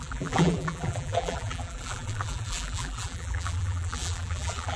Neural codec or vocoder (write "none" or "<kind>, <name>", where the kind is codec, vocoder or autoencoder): vocoder, BigVGAN v2